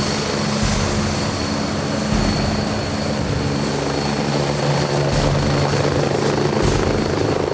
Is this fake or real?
real